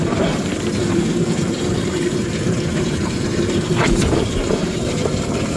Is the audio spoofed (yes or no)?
yes